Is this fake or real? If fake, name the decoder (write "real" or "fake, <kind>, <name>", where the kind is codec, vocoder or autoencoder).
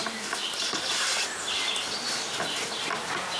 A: real